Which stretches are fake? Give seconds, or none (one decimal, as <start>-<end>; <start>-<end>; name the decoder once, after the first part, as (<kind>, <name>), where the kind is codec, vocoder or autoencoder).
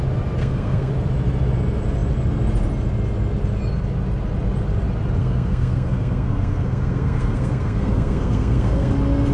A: 0.4-0.9 (codec, SNAC); 5.2-8.9